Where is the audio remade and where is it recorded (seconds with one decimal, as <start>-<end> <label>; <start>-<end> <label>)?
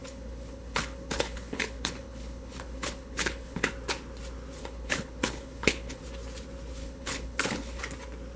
0.0-3.7 remade; 3.7-4.6 recorded; 4.6-6.0 remade; 6.0-6.8 recorded; 6.8-7.8 remade; 7.8-8.4 recorded